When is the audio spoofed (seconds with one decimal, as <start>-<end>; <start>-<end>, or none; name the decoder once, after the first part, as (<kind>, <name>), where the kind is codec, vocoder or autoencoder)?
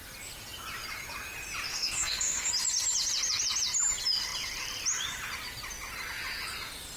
1.7-2.5 (codec, SNAC)